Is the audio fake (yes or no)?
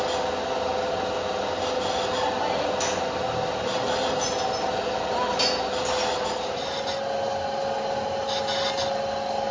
no